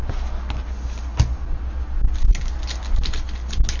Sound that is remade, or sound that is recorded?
recorded